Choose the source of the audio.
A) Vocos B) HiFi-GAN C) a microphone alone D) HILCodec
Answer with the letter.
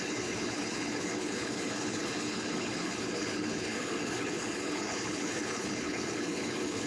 D